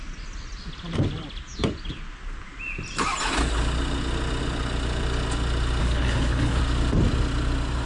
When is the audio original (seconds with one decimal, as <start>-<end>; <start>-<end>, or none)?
0.0-5.8; 6.6-7.9